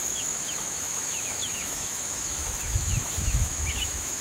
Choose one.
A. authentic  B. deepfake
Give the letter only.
B